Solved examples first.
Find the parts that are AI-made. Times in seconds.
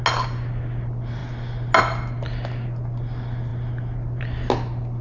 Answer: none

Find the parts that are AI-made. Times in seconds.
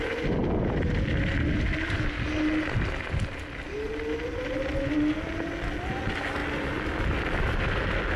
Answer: none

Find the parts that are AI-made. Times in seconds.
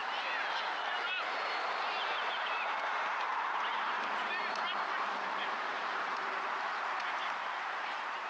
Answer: 1.0-8.3 (vocoder, BigVGAN v2)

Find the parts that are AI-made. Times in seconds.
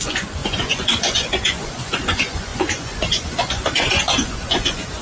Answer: 0.0-5.0 (vocoder, Vocos)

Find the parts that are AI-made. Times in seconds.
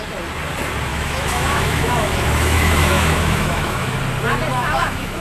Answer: 0.9-4.0 (autoencoder, DAC-VAE); 4.5-5.2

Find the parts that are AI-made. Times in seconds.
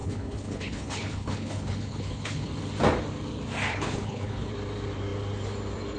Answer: 0.0-2.5 (codec, HILCodec); 3.7-4.5